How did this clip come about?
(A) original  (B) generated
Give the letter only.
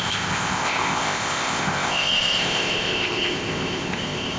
B